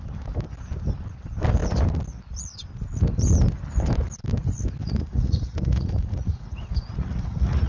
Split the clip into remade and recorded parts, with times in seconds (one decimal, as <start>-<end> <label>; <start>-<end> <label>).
0.0-4.8 recorded; 4.8-7.7 remade